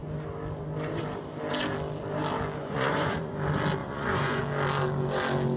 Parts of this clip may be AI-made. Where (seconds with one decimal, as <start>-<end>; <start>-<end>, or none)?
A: 2.6-3.3; 3.8-4.4